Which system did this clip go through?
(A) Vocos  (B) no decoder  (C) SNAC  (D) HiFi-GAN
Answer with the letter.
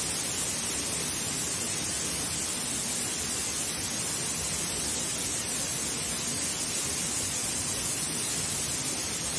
B